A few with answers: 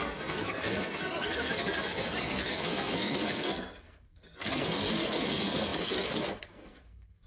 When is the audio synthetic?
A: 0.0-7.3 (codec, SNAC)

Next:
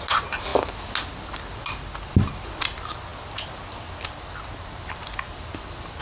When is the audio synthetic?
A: none

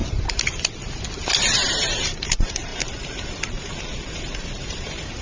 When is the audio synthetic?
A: 1.4-5.2 (vocoder, BigVGAN v2)

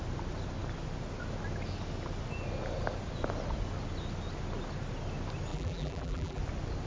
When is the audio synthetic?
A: 5.5-6.4 (vocoder, BigVGAN v2)

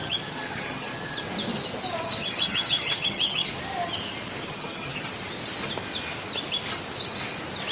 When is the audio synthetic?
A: 0.0-1.2 (vocoder, HiFi-GAN); 2.2-3.5; 4.4-5.1

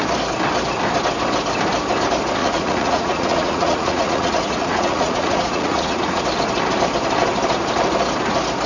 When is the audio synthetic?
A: 2.4-6.2 (vocoder, Vocos)

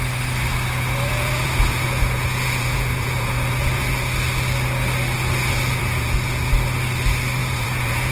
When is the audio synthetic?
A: 1.1-3.8 (vocoder, Vocos); 5.8-6.5; 7.4-8.1

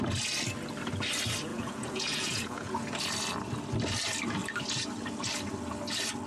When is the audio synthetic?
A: 1.5-2.7 (vocoder, Vocos)